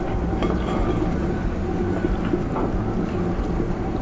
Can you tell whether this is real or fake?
real